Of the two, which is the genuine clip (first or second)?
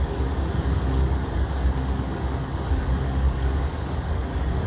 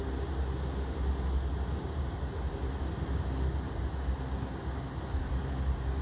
second